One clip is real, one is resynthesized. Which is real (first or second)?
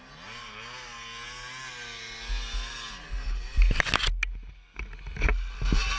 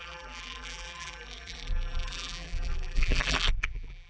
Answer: first